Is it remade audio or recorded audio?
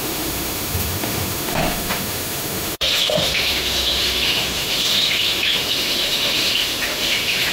remade